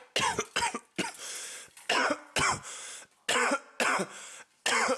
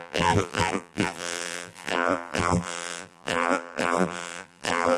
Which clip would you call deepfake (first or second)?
second